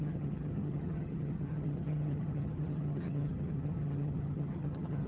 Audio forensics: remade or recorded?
remade